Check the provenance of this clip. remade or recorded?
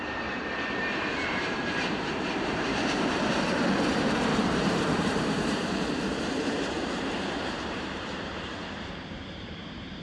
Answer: remade